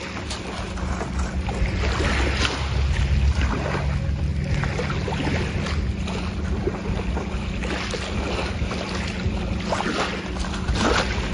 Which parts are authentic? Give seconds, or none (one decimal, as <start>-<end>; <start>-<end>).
0.0-11.3